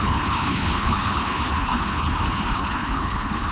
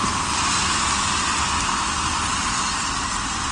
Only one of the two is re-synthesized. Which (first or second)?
first